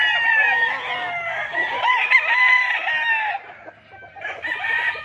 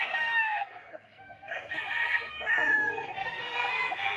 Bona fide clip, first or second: first